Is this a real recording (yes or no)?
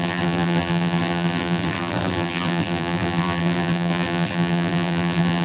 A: no